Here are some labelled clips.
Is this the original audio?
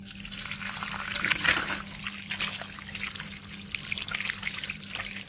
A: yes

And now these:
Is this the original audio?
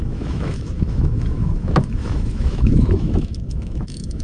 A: no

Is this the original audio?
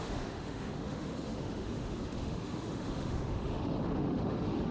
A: no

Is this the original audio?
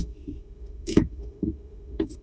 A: no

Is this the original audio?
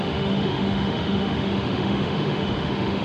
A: no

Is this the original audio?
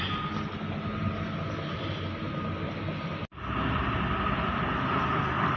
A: yes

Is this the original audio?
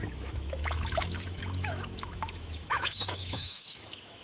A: no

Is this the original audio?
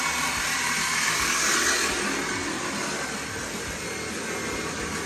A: yes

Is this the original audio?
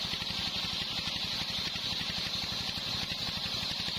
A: yes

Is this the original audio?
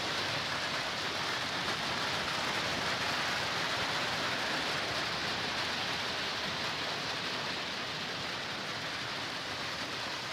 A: yes